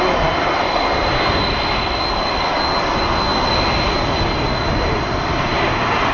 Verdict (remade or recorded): recorded